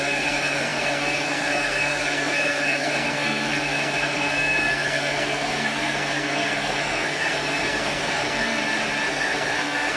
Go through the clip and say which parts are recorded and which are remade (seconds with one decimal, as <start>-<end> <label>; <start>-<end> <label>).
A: 0.0-8.6 remade; 8.6-9.1 recorded; 9.1-10.0 remade